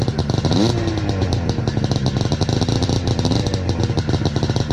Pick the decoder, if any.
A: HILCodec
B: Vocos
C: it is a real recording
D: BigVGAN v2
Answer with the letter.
C